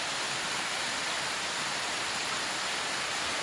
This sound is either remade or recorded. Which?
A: recorded